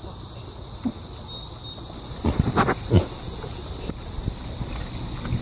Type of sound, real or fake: real